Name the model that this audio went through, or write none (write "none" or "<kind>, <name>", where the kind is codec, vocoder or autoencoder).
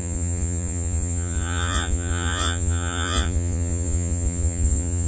vocoder, Vocos